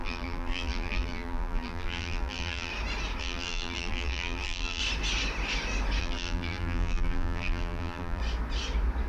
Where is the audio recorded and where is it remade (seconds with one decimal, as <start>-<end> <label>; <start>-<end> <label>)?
0.0-2.7 remade; 2.7-3.2 recorded; 3.2-4.8 remade; 4.8-6.0 recorded; 6.0-8.2 remade; 8.2-9.1 recorded